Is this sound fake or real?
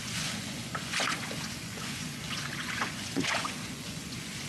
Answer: fake